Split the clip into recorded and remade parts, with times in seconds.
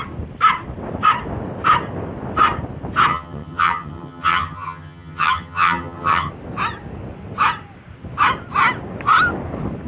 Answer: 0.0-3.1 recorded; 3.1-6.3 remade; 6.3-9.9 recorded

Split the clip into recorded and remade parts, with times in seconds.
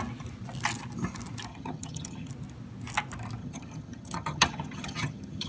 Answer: 0.0-1.5 recorded; 1.5-2.3 remade; 2.3-3.4 recorded; 3.4-5.5 remade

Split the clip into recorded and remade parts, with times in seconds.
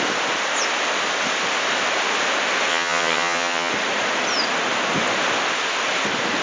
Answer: 0.0-2.7 recorded; 2.7-3.7 remade; 3.7-6.4 recorded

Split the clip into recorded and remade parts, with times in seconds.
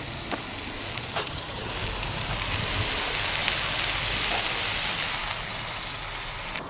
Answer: 0.0-1.2 recorded; 1.2-1.7 remade; 1.7-6.7 recorded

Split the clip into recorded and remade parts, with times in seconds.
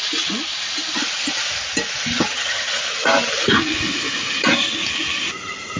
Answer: 0.0-2.1 recorded; 2.1-2.8 remade; 2.8-5.8 recorded